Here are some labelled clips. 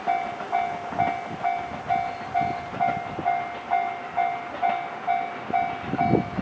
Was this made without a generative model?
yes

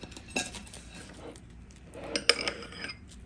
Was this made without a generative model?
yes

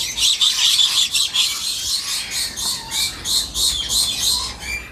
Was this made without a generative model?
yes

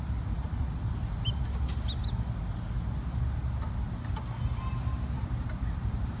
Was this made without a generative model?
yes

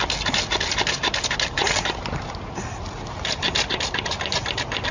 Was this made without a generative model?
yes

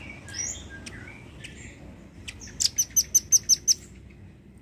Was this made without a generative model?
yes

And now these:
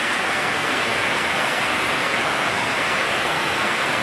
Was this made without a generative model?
no